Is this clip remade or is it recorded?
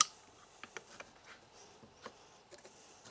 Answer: recorded